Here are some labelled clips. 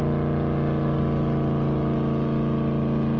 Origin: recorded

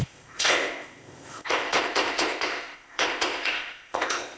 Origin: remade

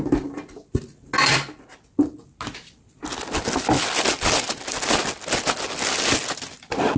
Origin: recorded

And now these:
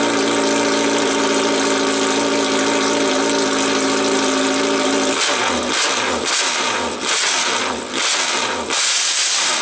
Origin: recorded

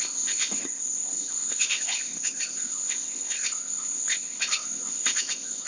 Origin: remade